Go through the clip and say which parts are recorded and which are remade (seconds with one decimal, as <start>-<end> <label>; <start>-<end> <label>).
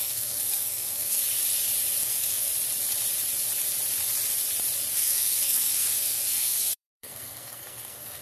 0.0-1.2 remade; 1.2-2.0 recorded; 2.0-2.5 remade; 2.5-4.9 recorded; 4.9-8.2 remade